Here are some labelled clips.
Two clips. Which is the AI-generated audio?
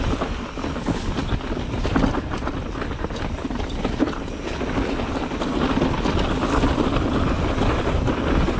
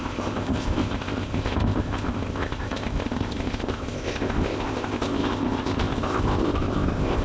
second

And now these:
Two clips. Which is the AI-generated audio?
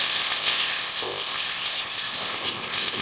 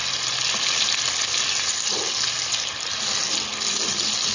first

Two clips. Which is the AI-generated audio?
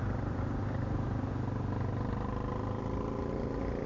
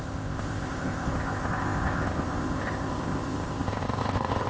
second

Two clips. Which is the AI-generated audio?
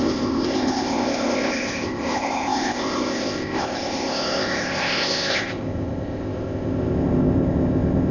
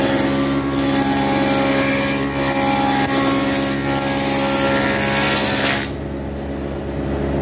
first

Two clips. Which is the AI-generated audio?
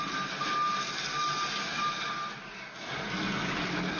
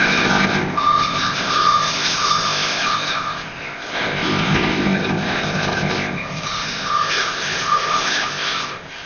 second